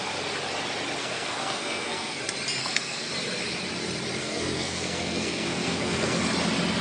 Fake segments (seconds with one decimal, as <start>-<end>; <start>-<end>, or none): 1.0-2.2; 2.6-3.1; 4.2-6.2